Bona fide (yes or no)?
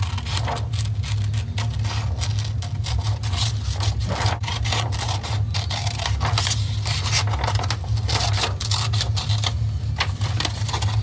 yes